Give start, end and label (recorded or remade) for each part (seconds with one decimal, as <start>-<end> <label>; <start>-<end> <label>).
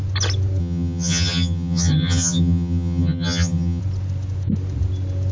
0.0-0.6 recorded; 0.6-3.8 remade; 3.8-5.3 recorded